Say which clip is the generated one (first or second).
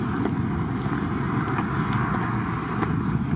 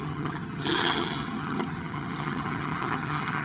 second